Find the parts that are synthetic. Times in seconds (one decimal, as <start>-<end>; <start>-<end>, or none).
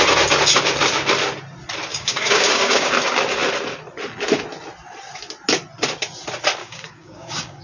1.9-2.9; 6.6-7.6